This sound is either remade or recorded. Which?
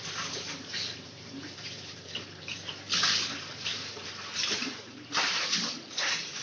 remade